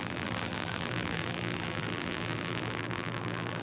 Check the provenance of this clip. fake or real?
fake